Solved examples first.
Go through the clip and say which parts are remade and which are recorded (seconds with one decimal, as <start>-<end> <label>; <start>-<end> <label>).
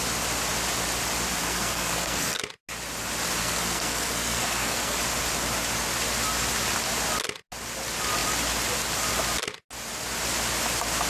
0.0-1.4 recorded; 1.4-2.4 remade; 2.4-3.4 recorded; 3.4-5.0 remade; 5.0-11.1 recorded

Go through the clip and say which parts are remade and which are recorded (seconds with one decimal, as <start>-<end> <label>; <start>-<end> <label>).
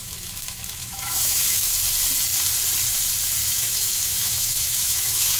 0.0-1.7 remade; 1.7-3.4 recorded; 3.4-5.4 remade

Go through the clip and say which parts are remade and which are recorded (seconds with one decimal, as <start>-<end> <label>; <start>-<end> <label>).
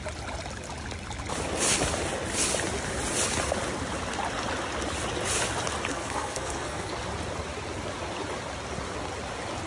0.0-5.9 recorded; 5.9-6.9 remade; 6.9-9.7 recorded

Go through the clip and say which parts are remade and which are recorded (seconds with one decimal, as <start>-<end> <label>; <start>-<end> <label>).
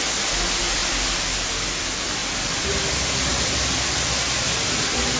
0.0-5.2 recorded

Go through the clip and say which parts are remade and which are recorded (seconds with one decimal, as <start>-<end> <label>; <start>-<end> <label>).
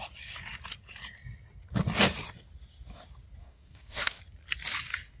0.0-3.4 recorded; 3.4-4.2 remade; 4.2-5.2 recorded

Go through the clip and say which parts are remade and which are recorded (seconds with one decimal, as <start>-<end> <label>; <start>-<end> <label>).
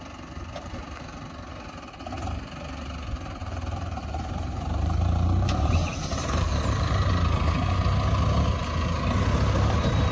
0.0-3.4 recorded; 3.4-6.9 remade; 6.9-10.1 recorded